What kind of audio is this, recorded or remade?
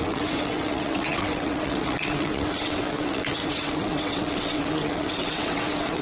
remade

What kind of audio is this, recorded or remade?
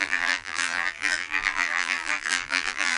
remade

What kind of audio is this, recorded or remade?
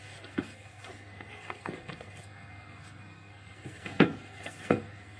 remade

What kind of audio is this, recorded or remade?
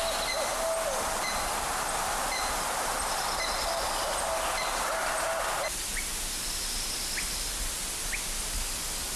recorded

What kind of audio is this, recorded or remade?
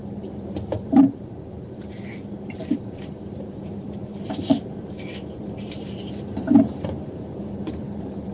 remade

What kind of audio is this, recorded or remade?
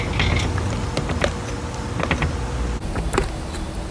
recorded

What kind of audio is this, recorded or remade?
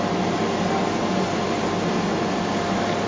recorded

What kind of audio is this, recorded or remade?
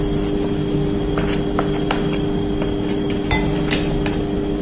recorded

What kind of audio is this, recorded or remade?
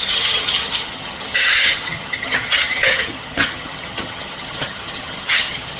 remade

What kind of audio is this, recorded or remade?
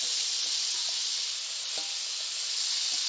recorded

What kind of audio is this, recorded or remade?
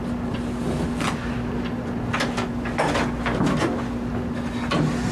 recorded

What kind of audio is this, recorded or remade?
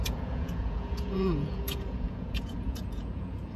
remade